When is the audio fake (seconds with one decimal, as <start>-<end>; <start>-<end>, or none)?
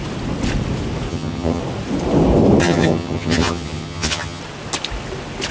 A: 1.1-1.6; 2.6-4.4